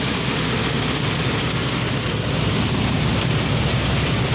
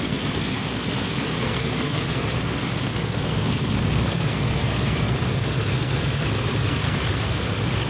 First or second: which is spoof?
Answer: second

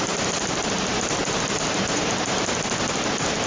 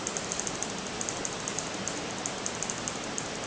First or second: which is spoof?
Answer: first